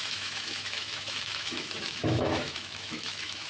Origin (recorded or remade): remade